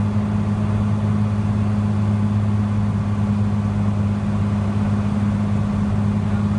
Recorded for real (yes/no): yes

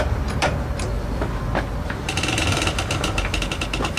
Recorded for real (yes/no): no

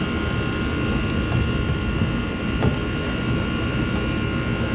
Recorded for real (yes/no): yes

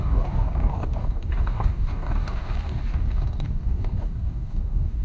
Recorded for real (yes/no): no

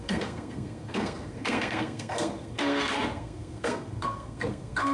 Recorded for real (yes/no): no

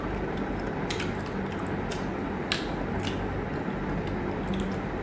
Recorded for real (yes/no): yes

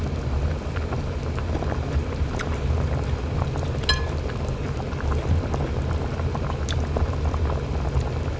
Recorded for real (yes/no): yes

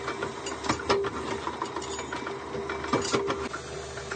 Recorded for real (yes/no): yes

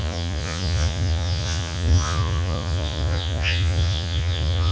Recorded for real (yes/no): no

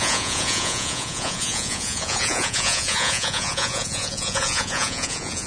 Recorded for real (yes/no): no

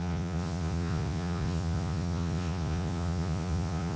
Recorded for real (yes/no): no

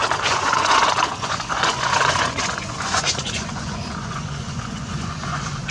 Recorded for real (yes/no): no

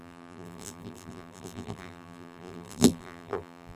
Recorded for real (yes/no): no